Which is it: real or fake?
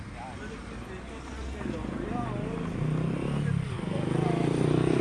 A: real